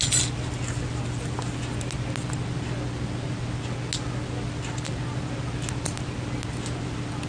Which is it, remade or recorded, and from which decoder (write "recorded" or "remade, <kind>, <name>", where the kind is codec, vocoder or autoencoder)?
recorded